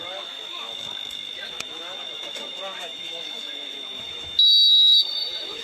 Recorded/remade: remade